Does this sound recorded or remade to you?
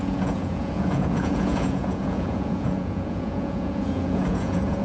remade